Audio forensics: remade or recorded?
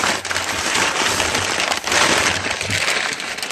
recorded